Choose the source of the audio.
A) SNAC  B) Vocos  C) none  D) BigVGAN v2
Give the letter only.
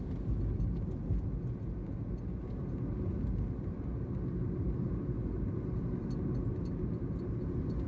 C